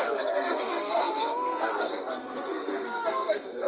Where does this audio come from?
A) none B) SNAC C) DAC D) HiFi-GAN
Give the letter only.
B